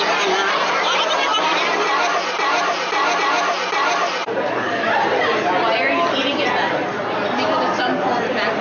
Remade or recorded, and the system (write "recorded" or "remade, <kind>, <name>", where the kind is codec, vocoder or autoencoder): recorded